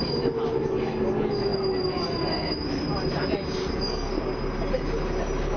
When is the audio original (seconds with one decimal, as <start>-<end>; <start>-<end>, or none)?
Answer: 0.0-3.6; 4.2-5.6